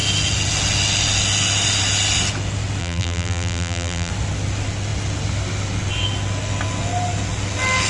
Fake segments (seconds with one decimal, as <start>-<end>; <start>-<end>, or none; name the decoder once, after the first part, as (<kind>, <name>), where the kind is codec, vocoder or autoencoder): 2.8-4.1 (vocoder, BigVGAN v2)